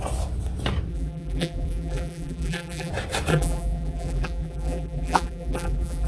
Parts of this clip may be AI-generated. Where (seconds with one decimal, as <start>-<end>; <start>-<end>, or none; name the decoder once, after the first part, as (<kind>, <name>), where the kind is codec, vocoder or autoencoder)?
0.9-2.9 (vocoder, BigVGAN v2); 3.3-6.1